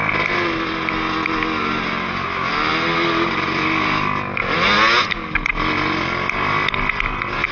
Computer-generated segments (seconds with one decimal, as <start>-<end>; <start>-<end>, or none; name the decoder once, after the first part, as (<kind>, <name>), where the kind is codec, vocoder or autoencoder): none